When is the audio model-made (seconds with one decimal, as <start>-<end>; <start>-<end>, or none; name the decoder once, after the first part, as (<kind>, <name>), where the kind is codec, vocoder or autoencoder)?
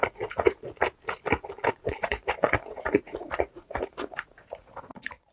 0.0-0.6 (vocoder, Vocos); 2.0-5.3